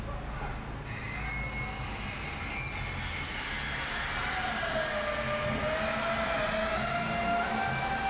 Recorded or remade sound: recorded